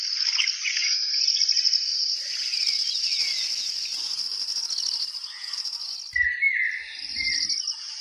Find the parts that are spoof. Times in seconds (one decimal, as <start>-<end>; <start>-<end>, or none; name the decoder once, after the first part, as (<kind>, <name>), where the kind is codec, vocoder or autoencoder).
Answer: 0.7-1.2 (codec, SNAC)